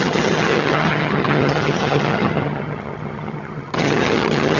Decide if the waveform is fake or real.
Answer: fake